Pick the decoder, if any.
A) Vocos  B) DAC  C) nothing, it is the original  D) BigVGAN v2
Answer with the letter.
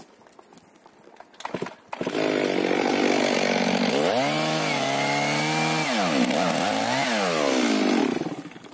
C